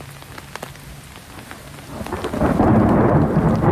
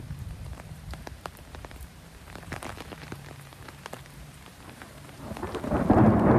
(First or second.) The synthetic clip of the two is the second